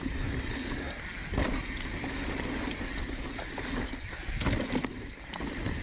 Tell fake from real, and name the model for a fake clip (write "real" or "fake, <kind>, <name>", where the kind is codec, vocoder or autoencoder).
real